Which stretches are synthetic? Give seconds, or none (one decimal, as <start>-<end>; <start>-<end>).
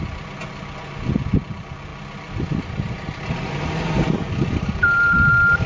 1.9-5.3